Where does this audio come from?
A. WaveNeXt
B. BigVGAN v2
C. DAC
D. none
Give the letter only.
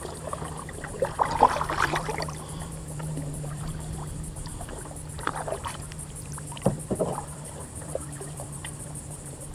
B